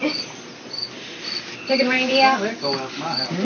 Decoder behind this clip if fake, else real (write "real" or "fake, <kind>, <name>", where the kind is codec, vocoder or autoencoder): real